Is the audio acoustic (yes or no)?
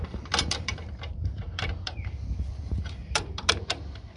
no